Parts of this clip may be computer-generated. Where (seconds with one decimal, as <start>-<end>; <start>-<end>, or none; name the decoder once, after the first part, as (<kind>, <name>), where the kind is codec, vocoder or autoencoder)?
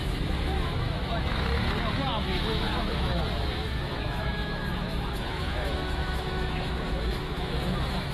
0.0-8.1 (autoencoder, DAC-VAE)